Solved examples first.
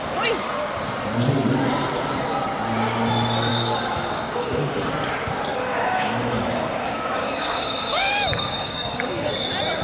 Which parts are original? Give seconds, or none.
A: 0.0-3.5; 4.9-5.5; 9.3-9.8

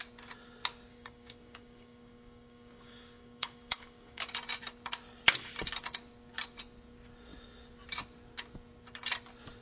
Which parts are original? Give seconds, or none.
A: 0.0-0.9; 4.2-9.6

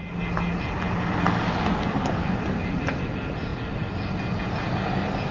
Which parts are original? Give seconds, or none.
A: 0.0-5.3

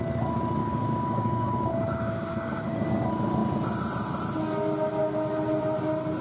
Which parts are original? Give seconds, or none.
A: 0.0-0.6; 2.9-6.2